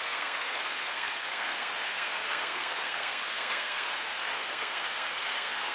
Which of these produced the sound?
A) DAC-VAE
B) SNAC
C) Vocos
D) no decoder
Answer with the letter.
B